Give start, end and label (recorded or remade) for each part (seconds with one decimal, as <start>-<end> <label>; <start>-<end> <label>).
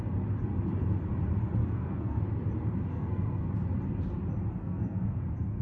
0.0-1.6 recorded; 1.6-2.2 remade; 2.2-2.9 recorded; 2.9-3.5 remade; 3.5-4.6 recorded; 4.6-5.6 remade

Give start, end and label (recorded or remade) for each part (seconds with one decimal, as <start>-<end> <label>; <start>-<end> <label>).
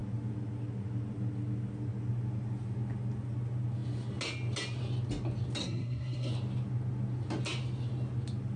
0.0-5.6 recorded; 5.6-6.3 remade; 6.3-8.6 recorded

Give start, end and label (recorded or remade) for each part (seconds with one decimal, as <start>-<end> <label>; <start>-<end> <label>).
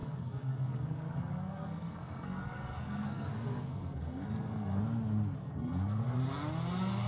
0.0-3.3 remade; 3.3-3.7 recorded; 3.7-4.8 remade; 4.8-5.4 recorded; 5.4-6.0 remade; 6.0-7.1 recorded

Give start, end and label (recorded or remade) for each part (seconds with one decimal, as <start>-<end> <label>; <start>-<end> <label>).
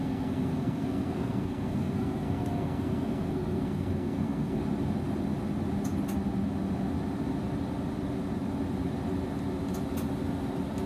0.0-4.6 remade; 4.6-10.9 recorded